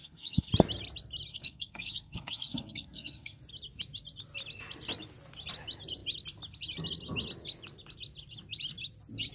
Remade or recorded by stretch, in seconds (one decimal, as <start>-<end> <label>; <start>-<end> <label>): 0.0-0.5 remade; 0.5-1.3 recorded; 1.3-3.4 remade; 3.4-9.3 recorded